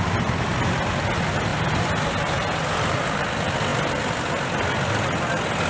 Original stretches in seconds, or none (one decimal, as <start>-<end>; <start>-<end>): 0.0-5.7